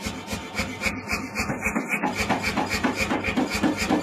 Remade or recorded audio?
recorded